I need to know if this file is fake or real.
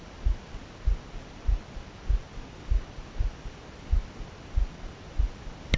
real